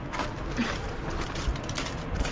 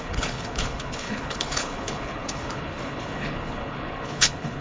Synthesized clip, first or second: second